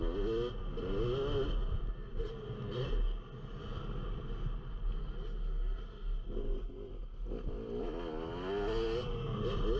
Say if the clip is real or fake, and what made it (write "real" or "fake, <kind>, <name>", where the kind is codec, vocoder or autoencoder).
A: real